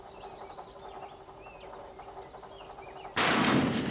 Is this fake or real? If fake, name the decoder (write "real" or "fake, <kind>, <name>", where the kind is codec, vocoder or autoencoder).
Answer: real